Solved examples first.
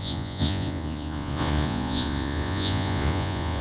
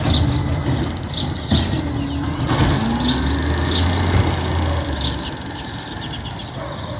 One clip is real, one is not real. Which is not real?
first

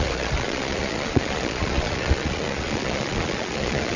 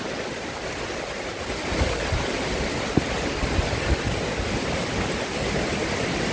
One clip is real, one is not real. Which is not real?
first